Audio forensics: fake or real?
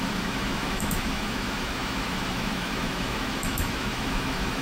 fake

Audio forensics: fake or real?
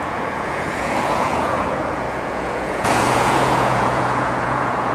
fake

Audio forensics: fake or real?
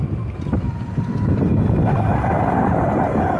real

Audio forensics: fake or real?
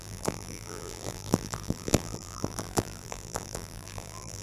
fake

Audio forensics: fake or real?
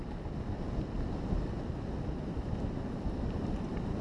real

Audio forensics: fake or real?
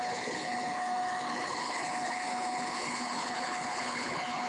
fake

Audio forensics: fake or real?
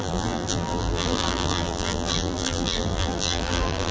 fake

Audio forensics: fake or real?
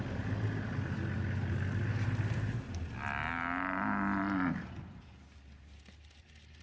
real